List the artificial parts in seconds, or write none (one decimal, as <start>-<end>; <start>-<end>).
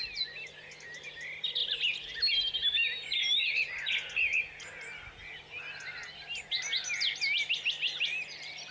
none